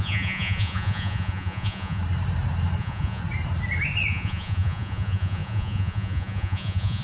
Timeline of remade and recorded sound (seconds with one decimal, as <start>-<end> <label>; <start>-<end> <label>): 0.0-2.0 remade; 2.0-2.8 recorded; 2.8-3.2 remade; 3.2-4.1 recorded; 4.1-7.0 remade